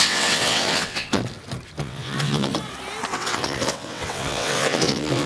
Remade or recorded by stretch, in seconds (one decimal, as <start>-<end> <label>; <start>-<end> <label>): 0.0-1.2 remade; 1.2-1.8 recorded; 1.8-2.5 remade; 2.5-3.1 recorded; 3.1-5.3 remade